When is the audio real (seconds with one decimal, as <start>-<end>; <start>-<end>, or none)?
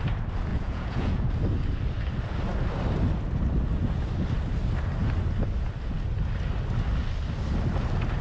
0.0-0.5; 1.3-8.2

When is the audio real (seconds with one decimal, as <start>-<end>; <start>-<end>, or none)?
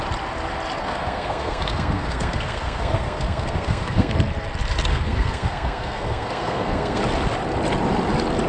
0.0-0.8; 4.1-4.9; 7.0-8.5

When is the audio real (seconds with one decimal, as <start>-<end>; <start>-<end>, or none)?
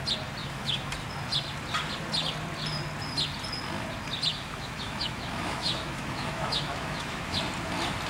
0.0-0.4; 0.9-4.3; 7.4-8.1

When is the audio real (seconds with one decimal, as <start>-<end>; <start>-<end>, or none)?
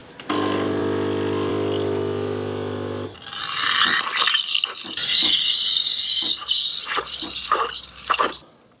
1.5-4.8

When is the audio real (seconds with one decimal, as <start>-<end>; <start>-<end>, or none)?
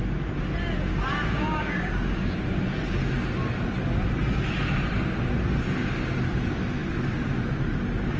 0.0-1.4; 2.3-8.2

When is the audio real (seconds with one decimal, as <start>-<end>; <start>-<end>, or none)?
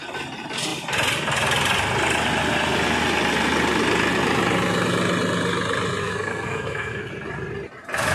0.0-6.0; 7.1-8.1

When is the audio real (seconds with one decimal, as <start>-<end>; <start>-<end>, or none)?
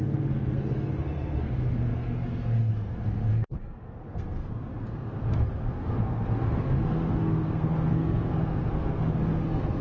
none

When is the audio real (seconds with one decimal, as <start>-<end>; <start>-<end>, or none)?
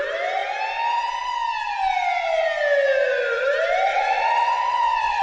0.0-3.9